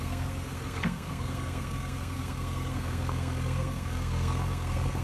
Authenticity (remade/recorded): remade